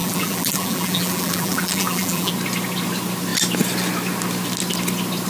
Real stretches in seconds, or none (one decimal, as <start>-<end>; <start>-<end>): 2.3-5.3